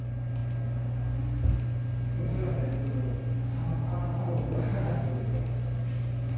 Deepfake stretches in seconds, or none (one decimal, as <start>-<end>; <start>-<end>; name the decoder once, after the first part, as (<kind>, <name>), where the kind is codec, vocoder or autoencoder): none